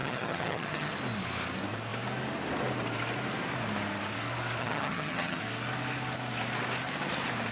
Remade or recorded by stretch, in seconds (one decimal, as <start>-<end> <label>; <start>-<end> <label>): 0.0-0.9 remade; 0.9-4.6 recorded; 4.6-5.4 remade; 5.4-7.5 recorded